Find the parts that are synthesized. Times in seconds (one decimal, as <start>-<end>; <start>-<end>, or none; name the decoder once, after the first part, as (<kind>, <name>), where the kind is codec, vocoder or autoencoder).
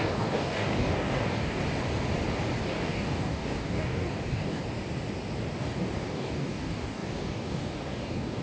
0.0-1.6 (codec, DAC); 2.6-4.6; 5.6-8.4